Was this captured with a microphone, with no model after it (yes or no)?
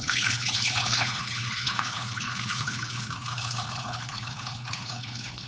no